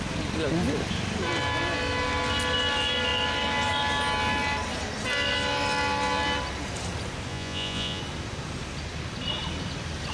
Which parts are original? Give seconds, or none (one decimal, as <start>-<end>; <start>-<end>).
0.0-7.3; 8.0-10.1